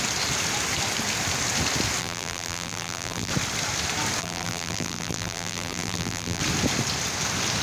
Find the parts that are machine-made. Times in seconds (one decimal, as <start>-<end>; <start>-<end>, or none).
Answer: 2.0-3.3; 4.2-6.4